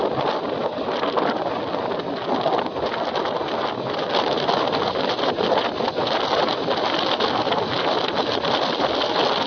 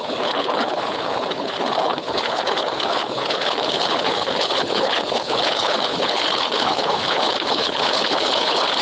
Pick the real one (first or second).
first